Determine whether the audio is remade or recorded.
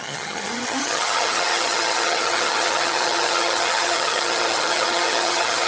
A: remade